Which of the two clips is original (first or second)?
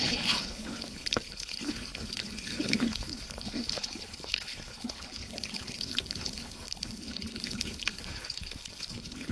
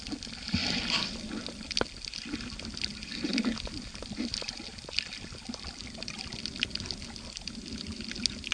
second